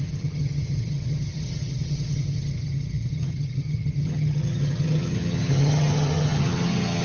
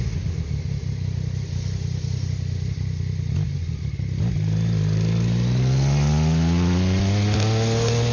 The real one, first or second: second